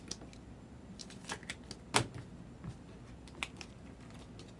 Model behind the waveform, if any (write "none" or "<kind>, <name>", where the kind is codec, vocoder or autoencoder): none